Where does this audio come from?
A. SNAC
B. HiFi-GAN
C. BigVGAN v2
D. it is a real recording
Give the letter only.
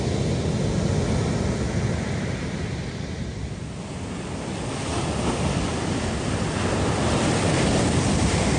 D